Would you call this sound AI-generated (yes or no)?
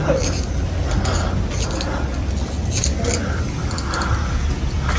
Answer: no